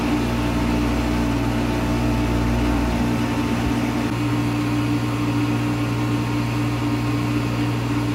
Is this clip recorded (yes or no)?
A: yes